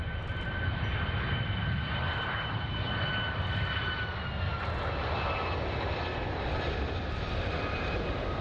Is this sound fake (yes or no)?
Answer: no